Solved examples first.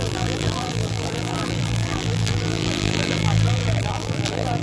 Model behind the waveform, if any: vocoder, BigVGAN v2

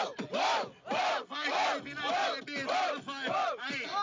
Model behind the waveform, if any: none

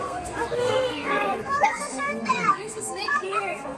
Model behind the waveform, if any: codec, SNAC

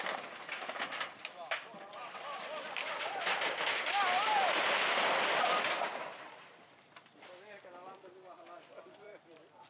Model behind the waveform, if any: vocoder, BigVGAN v2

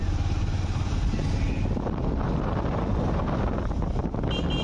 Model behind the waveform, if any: none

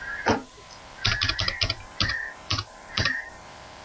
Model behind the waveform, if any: vocoder, BigVGAN v2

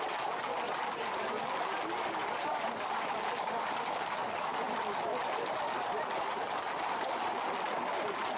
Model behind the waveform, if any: none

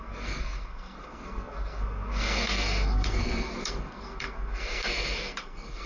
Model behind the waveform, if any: codec, SNAC